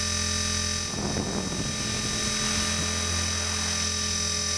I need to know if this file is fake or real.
real